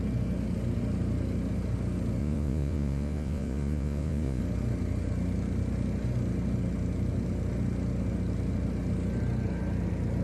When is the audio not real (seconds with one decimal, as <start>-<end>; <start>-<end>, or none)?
2.2-4.4